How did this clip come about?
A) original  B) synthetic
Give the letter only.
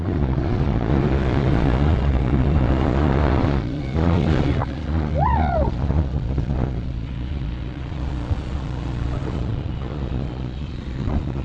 B